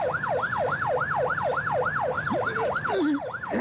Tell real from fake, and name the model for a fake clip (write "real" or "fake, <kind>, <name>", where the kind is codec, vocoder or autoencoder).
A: real